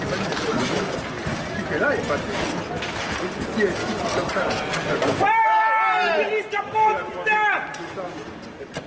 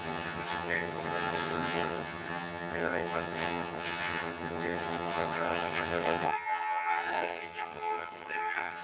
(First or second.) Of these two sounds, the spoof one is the second